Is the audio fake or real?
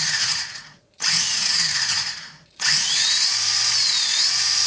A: fake